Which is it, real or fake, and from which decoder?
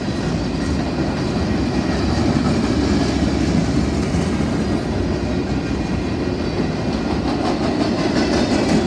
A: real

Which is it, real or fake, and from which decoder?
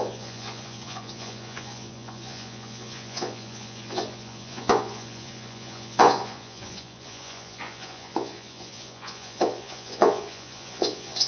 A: fake, vocoder, Vocos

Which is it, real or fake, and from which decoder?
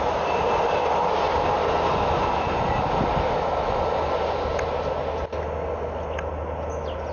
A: real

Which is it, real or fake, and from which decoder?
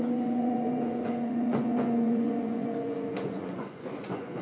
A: fake, vocoder, Vocos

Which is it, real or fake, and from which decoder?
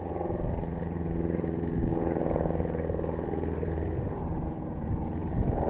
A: fake, vocoder, Vocos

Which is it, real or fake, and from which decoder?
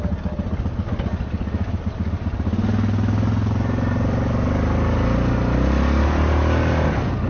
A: real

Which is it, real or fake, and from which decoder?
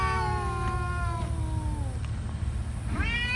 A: real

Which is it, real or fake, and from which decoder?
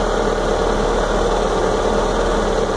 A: real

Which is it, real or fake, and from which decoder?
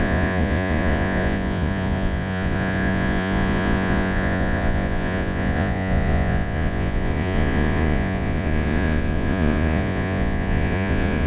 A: fake, vocoder, Vocos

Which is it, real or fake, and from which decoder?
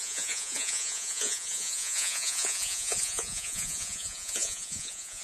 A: fake, vocoder, Vocos